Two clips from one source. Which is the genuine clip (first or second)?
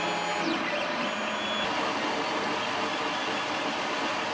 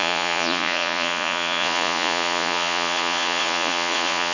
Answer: first